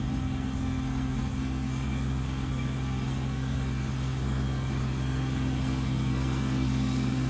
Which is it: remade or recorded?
remade